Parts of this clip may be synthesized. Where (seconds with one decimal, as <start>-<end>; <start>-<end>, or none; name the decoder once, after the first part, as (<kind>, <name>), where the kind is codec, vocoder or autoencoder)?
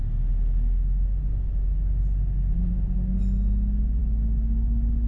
4.0-5.1 (autoencoder, DAC-VAE)